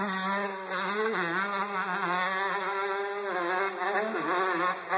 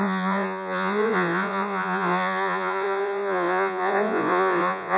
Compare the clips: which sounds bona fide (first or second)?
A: first